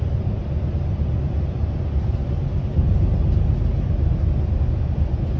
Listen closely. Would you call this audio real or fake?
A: real